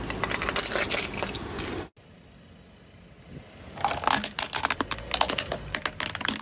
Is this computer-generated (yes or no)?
no